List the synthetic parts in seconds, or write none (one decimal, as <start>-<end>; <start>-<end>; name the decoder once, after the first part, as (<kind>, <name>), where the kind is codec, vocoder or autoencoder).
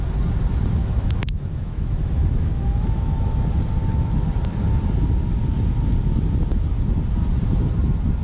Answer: 0.8-3.5 (autoencoder, DAC-VAE)